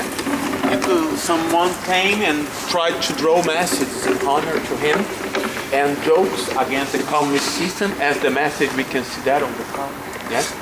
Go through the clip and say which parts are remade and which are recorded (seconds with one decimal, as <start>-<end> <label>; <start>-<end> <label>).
0.0-7.0 recorded; 7.0-7.9 remade; 7.9-10.6 recorded